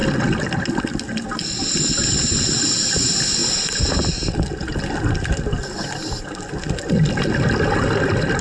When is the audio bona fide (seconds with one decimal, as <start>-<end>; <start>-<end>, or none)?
0.0-8.4